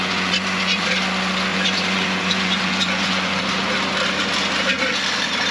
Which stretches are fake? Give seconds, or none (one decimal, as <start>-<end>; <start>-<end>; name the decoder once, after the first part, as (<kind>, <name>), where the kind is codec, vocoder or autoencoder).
0.0-0.9 (vocoder, Vocos); 1.5-3.4

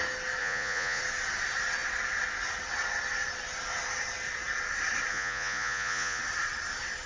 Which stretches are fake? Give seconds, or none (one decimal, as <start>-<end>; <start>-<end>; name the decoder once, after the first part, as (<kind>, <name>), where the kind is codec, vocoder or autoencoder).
0.4-1.0 (vocoder, Vocos); 5.1-6.2

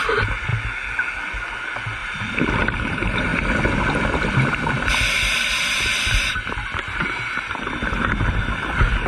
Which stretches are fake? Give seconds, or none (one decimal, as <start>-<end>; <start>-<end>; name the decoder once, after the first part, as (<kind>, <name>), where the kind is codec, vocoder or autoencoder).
2.0-2.5 (vocoder, BigVGAN v2)

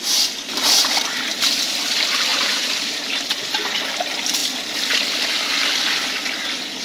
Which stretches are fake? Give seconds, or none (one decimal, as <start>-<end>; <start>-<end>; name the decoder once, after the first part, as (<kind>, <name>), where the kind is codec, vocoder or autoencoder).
2.3-3.3 (vocoder, BigVGAN v2)

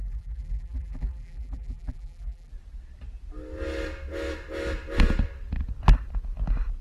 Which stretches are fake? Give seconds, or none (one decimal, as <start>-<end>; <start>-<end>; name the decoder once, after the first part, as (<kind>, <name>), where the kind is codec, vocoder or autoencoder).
0.0-2.5 (vocoder, BigVGAN v2)